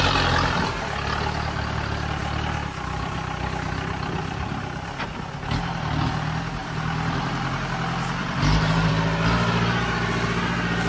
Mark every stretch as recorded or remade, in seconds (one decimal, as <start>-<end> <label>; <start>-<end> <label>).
0.0-6.6 recorded; 6.6-7.3 remade; 7.3-8.2 recorded; 8.2-8.9 remade; 8.9-10.9 recorded